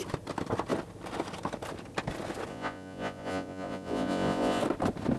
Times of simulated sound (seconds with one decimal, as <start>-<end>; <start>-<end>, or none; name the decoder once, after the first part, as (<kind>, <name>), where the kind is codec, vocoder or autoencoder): 2.5-4.6 (vocoder, Vocos)